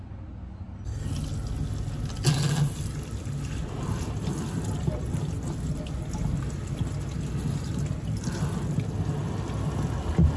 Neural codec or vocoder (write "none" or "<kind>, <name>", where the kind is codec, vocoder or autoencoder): none